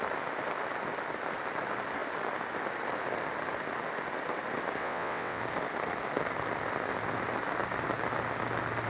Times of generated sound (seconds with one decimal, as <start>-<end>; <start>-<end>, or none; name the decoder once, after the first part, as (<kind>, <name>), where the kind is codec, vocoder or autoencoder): 4.8-5.4 (vocoder, WaveNeXt)